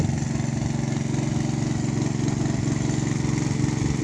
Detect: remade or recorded recorded